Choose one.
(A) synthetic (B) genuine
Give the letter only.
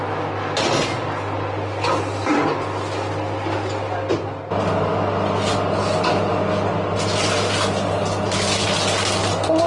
B